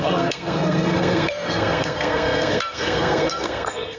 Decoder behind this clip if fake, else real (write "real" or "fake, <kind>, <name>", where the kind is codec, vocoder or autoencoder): fake, codec, SNAC